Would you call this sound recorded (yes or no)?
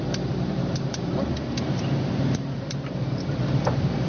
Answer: no